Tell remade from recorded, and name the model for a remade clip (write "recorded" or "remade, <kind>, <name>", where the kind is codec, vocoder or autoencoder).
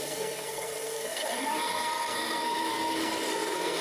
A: remade, codec, SNAC